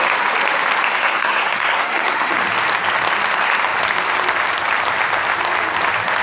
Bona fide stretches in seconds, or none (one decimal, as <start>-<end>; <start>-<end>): 0.0-1.0; 2.3-6.2